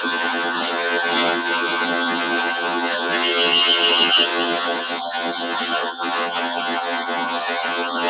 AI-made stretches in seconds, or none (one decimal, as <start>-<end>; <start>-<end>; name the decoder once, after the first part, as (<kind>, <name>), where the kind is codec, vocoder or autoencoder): 0.0-8.1 (vocoder, HiFi-GAN)